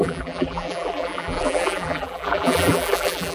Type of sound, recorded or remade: remade